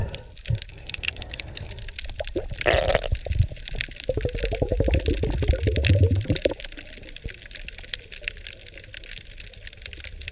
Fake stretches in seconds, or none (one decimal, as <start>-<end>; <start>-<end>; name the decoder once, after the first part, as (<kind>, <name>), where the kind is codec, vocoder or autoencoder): 0.7-1.7 (codec, SNAC)